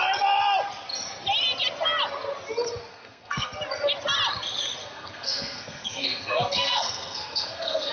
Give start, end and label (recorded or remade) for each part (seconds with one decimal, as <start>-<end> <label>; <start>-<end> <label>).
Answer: 0.0-2.9 recorded; 2.9-3.6 remade; 3.6-4.8 recorded; 4.8-7.9 remade